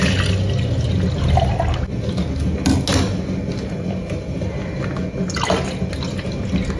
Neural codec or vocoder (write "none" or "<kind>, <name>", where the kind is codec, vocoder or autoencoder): none